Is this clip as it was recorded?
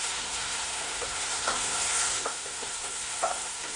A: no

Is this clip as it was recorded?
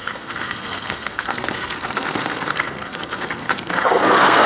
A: no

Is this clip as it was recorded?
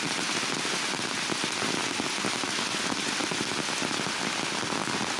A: yes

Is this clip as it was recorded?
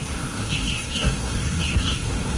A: no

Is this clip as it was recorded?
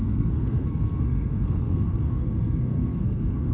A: no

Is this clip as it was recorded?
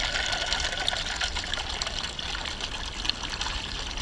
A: yes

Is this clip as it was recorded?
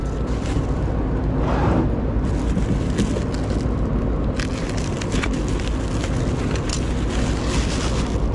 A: yes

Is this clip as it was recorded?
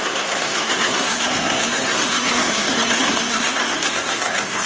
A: no